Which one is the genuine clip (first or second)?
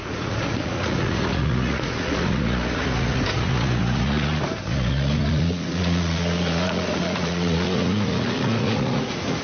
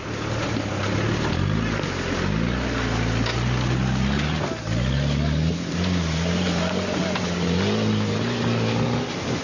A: second